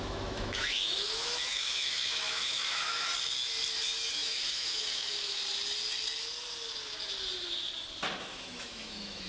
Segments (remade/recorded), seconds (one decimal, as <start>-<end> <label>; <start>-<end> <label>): 0.0-3.1 remade; 3.1-4.1 recorded; 4.1-5.4 remade; 5.4-8.2 recorded; 8.2-9.3 remade